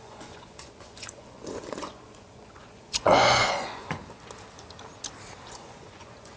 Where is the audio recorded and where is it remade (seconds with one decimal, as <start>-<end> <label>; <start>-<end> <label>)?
0.0-4.0 remade; 4.0-5.5 recorded; 5.5-6.4 remade

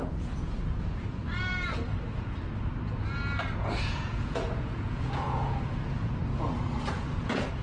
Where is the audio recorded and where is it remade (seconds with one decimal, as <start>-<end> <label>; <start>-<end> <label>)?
0.0-1.2 remade; 1.2-3.6 recorded; 3.6-6.2 remade; 6.2-6.9 recorded; 6.9-7.6 remade

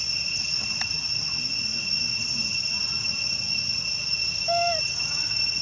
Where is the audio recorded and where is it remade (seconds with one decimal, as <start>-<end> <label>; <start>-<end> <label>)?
0.0-5.6 recorded